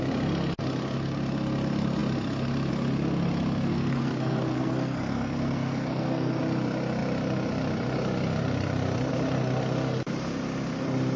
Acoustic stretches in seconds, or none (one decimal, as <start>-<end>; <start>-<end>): 0.0-3.7; 6.4-11.2